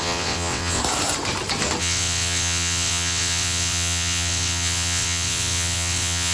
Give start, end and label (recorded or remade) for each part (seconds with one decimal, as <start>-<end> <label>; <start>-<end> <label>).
0.0-0.8 remade; 0.8-1.8 recorded; 1.8-6.3 remade